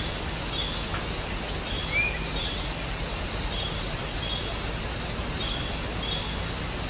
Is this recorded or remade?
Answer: recorded